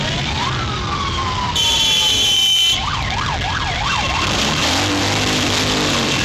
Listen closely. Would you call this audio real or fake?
fake